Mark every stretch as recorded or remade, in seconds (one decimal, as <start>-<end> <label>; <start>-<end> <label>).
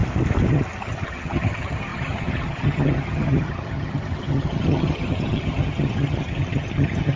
0.0-0.5 recorded; 0.5-7.2 remade